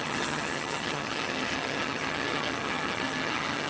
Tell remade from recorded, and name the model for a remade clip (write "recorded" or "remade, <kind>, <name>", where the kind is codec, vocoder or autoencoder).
remade, vocoder, HiFi-GAN